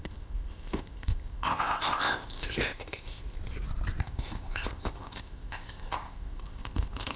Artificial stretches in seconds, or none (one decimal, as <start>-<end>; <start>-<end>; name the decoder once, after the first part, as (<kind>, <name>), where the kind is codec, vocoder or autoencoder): 0.0-3.4 (codec, ZipCodec); 4.0-7.2